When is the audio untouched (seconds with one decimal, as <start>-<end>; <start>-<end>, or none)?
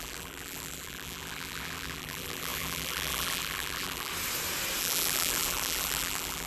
4.1-4.8